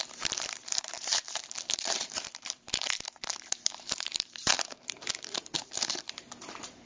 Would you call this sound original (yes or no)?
no